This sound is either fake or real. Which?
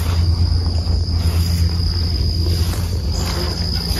real